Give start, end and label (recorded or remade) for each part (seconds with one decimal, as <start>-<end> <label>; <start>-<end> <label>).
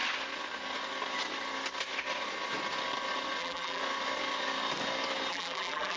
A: 0.0-3.4 recorded; 3.4-3.8 remade; 3.8-5.3 recorded; 5.3-6.0 remade